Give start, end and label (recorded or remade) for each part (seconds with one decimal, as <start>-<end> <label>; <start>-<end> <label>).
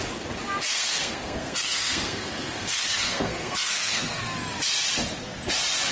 0.0-0.7 recorded; 0.7-4.2 remade; 4.2-5.9 recorded